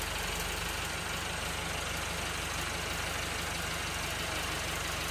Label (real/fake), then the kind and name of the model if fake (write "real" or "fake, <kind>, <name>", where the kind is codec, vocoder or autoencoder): real